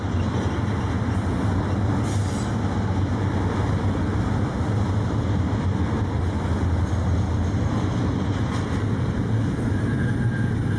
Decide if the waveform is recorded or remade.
recorded